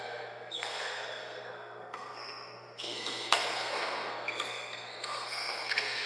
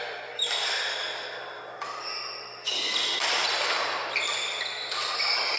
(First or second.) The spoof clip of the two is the first